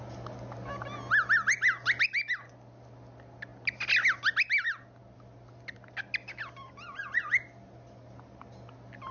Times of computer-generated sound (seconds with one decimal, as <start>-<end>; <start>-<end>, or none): none